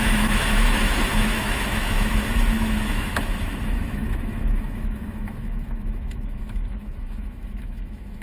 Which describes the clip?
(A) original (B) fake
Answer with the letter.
B